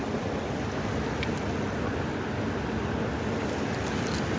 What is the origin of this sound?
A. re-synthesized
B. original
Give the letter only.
B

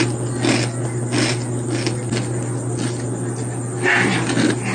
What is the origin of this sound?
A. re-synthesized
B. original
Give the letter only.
B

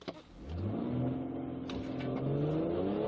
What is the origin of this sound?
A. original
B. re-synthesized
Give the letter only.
A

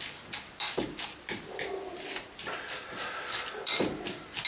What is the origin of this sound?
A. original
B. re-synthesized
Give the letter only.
A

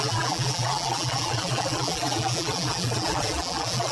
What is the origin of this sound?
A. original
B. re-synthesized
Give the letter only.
B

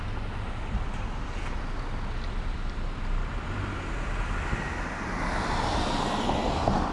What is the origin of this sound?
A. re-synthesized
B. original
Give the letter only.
B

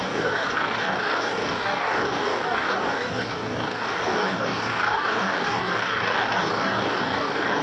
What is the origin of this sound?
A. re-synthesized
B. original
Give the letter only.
A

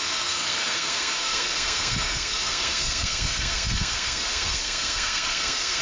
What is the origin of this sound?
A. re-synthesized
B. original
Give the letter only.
A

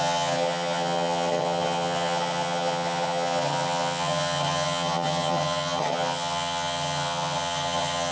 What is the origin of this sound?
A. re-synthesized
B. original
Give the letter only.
A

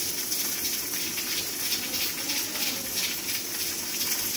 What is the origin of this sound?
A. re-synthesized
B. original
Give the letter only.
B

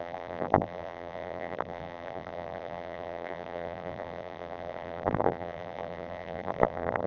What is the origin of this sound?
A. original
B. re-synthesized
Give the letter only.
B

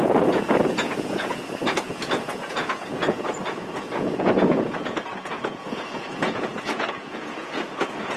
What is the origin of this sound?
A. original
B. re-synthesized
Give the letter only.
B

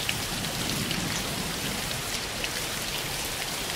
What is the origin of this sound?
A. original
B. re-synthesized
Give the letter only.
A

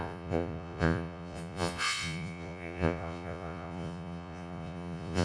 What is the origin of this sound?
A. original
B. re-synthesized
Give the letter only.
B